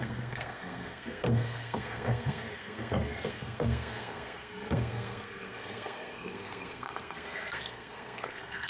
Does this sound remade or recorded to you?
remade